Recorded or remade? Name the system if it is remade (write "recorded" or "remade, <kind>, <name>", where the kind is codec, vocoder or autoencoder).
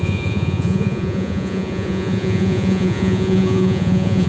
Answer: remade, vocoder, Vocos